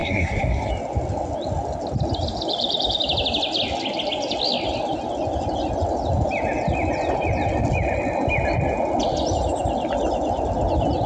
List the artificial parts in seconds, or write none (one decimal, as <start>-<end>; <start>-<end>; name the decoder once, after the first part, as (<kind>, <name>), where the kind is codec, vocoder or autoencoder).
0.0-0.7 (codec, SNAC)